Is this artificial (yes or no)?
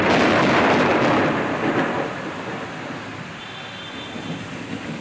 no